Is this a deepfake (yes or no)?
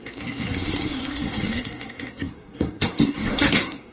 yes